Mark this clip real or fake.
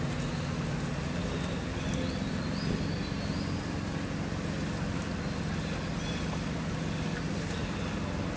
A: real